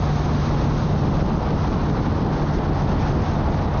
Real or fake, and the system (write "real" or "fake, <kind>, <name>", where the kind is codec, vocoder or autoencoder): real